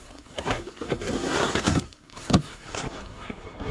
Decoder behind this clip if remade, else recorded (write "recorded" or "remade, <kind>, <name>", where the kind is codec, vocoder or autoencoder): remade, codec, SNAC